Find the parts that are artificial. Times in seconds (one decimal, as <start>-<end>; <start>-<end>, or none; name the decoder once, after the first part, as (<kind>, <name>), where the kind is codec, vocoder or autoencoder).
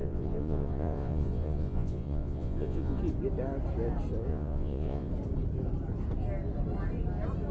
0.0-3.0 (vocoder, Vocos); 4.3-5.1